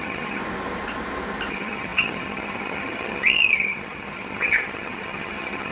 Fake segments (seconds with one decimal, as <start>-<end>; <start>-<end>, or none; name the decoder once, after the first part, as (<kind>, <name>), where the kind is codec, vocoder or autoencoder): 0.0-0.4 (vocoder, HiFi-GAN); 1.5-5.7